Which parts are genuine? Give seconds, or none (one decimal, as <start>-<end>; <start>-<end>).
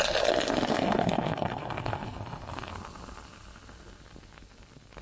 0.0-0.7; 2.7-5.0